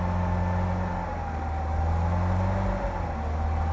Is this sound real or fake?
real